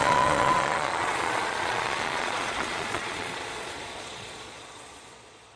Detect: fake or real fake